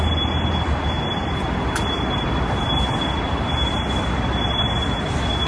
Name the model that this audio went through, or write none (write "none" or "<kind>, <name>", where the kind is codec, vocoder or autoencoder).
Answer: none